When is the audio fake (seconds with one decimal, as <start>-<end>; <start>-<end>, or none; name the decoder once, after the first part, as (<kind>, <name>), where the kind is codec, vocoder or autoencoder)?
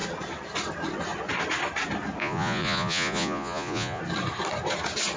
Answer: 2.2-4.0 (vocoder, Vocos)